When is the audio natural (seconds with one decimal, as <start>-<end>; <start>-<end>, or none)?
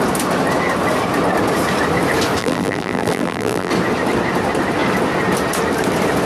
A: 0.0-2.4; 3.7-6.2